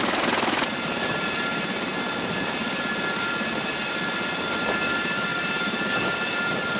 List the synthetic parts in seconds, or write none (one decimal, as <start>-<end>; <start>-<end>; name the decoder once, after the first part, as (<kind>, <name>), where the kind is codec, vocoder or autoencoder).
none